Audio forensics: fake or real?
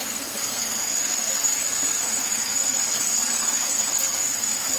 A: fake